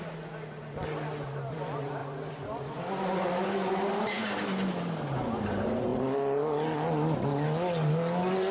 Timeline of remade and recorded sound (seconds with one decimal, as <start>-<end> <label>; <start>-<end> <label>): 0.0-8.5 recorded